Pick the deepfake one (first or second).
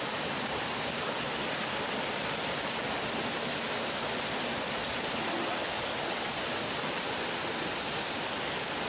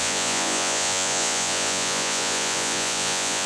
second